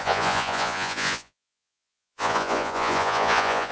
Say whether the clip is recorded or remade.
remade